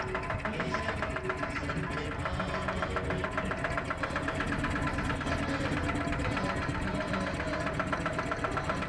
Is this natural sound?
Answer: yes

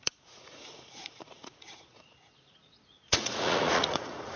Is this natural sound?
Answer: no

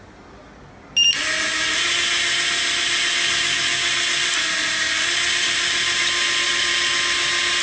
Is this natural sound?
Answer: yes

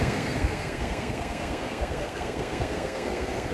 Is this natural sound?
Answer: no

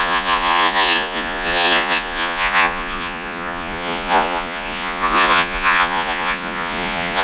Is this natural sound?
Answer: no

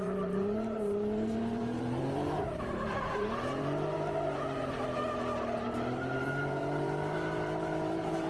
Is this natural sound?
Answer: no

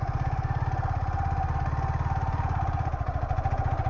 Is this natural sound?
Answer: yes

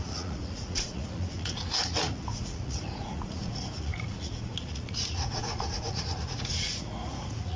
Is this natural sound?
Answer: no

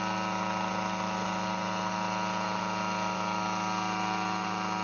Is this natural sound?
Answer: yes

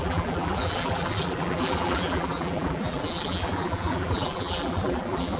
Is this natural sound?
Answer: no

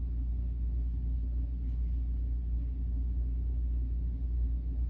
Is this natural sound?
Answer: yes